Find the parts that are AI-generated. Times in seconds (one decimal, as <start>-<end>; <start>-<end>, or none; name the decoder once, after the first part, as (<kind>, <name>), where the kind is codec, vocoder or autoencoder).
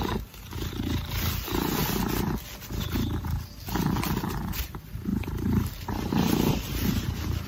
5.1-7.1 (vocoder, BigVGAN v2)